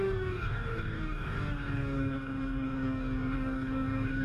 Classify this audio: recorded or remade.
remade